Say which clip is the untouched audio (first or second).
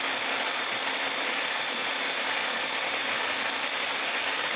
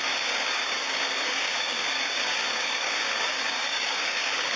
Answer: first